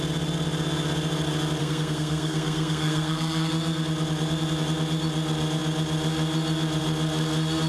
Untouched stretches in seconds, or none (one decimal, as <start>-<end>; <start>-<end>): 0.0-1.6; 3.5-7.7